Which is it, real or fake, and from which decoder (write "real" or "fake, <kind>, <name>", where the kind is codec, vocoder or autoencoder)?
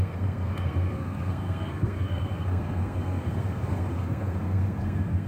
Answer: fake, codec, SNAC